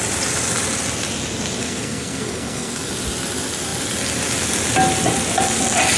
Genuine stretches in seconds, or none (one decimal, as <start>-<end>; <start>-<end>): 0.0-1.6; 2.9-6.0